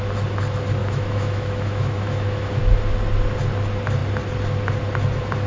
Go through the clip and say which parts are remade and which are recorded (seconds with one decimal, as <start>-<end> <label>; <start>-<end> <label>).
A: 0.0-0.8 recorded; 0.8-2.6 remade; 2.6-5.5 recorded

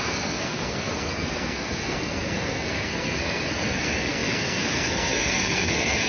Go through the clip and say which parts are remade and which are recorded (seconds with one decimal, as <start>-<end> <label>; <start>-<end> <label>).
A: 0.0-6.1 remade

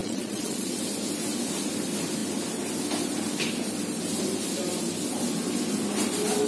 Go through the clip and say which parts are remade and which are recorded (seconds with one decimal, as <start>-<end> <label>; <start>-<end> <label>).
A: 0.0-0.8 remade; 0.8-6.5 recorded

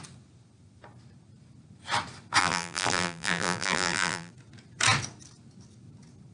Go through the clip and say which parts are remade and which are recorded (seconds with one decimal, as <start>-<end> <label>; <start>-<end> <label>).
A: 0.0-2.4 recorded; 2.4-4.3 remade; 4.3-6.3 recorded

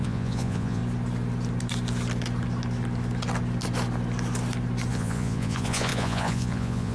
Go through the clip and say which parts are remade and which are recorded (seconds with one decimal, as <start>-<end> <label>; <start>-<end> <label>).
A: 0.0-0.8 remade; 0.8-4.9 recorded; 4.9-6.9 remade

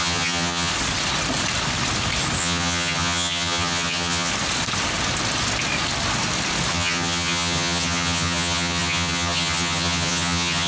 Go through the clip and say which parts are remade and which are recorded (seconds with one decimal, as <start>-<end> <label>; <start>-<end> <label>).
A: 0.0-0.7 remade; 0.7-2.4 recorded; 2.4-4.3 remade; 4.3-6.7 recorded; 6.7-10.7 remade

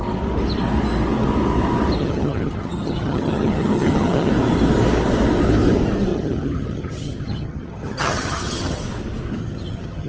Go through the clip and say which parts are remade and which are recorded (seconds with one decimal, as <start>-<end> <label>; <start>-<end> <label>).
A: 0.0-2.0 recorded; 2.0-4.3 remade; 4.3-6.1 recorded; 6.1-8.8 remade; 8.8-9.4 recorded; 9.4-10.1 remade

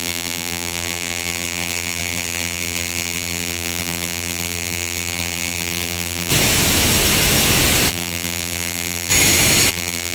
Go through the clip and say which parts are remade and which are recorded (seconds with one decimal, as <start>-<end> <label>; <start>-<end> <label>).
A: 0.0-6.3 remade; 6.3-7.9 recorded; 7.9-9.1 remade; 9.1-9.7 recorded; 9.7-10.1 remade